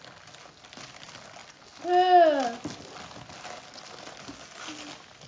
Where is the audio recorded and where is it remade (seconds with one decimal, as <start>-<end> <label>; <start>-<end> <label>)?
0.0-5.3 recorded